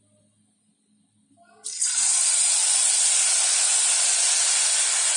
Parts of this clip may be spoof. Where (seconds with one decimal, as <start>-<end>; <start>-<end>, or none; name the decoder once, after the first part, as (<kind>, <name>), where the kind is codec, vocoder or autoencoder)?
none

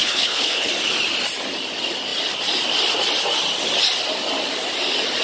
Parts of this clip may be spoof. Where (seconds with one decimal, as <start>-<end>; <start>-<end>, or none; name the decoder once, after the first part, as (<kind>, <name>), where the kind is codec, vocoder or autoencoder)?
0.0-0.7 (codec, HILCodec)

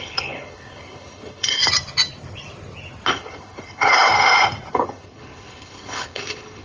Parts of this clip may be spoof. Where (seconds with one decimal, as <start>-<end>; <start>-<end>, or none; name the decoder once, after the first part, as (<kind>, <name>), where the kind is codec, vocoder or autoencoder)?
0.0-1.6 (codec, HILCodec); 3.1-4.1; 4.7-6.6

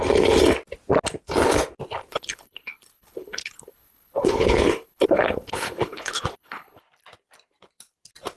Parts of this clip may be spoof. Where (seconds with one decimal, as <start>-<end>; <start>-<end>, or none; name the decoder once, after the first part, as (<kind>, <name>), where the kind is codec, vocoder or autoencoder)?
2.1-6.8 (codec, HILCodec)

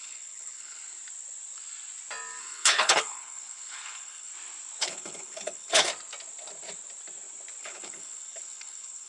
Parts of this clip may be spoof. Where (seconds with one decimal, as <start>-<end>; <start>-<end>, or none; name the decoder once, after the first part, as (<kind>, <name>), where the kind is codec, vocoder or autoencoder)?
0.0-0.8 (codec, HILCodec); 2.4-4.3; 4.8-5.9; 7.6-9.1